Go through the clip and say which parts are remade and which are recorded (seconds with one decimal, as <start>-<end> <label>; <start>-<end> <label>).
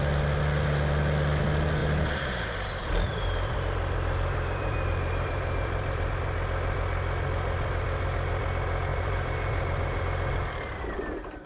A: 0.0-1.8 recorded; 1.8-6.1 remade; 6.1-8.9 recorded; 8.9-10.0 remade; 10.0-11.5 recorded